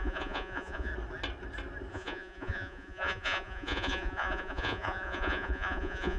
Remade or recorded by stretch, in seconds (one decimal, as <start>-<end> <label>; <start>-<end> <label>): 0.0-0.9 remade; 0.9-1.9 recorded; 1.9-6.2 remade